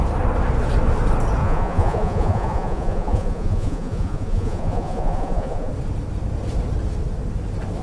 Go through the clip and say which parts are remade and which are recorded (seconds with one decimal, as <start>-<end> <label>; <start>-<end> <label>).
0.0-1.4 recorded; 1.4-5.7 remade; 5.7-7.8 recorded